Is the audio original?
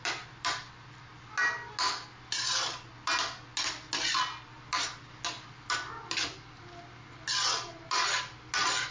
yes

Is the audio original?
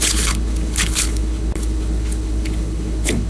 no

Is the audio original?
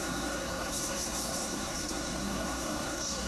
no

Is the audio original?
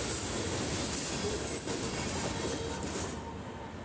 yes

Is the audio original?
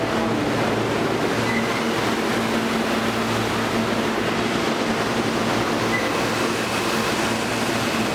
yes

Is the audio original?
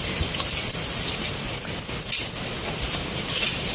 yes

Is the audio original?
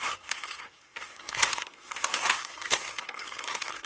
no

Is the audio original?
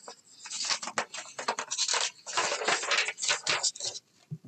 yes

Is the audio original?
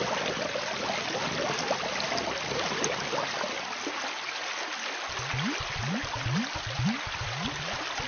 yes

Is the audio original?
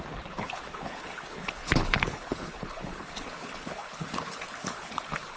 no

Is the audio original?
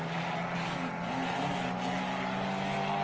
yes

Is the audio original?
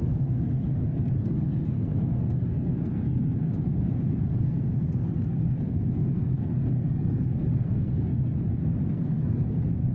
no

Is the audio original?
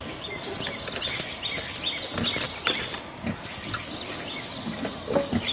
yes